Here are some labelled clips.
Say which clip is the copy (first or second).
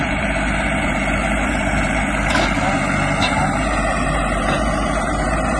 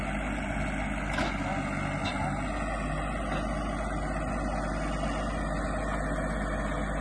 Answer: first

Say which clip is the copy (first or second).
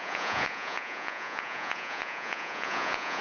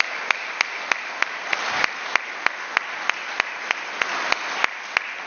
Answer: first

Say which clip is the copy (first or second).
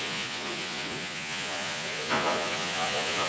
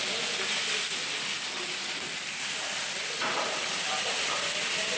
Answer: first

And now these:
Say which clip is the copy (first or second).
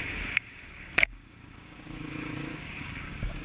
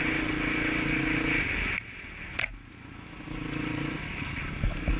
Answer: first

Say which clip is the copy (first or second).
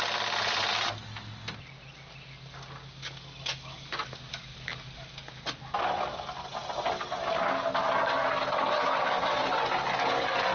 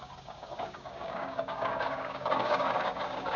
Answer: second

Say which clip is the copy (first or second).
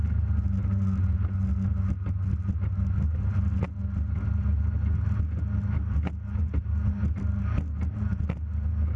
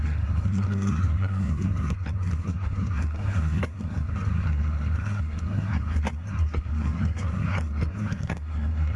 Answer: second